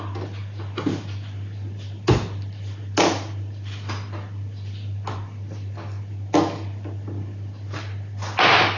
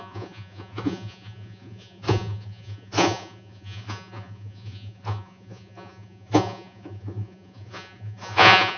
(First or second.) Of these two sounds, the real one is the first